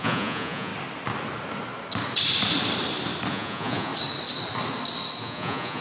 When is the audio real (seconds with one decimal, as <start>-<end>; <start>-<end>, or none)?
0.7-3.3; 3.9-5.2